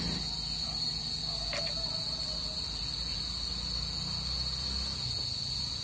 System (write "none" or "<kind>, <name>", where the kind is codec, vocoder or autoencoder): none